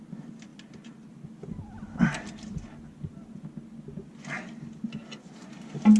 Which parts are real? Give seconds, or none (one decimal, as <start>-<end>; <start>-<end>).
0.0-6.0